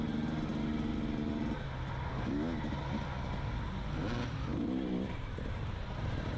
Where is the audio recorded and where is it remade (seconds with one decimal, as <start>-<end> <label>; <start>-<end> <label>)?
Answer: 0.0-4.5 recorded; 4.5-6.4 remade

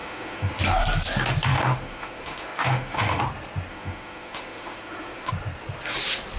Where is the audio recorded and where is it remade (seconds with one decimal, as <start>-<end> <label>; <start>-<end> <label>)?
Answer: 0.0-0.6 remade; 0.6-1.5 recorded; 1.5-3.2 remade; 3.2-3.7 recorded; 3.7-5.3 remade; 5.3-6.4 recorded